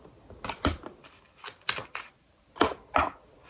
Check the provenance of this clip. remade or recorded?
recorded